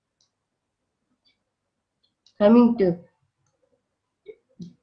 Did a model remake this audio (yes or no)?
no